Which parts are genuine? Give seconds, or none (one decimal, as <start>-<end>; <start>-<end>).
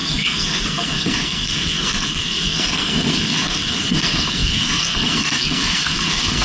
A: none